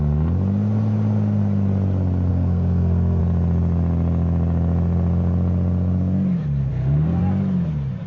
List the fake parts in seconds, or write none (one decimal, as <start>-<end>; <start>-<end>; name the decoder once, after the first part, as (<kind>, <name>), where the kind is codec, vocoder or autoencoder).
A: 2.3-3.2 (codec, SNAC); 6.7-7.2